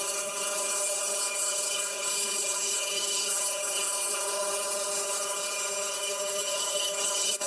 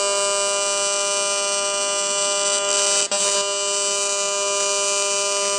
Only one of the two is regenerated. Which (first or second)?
first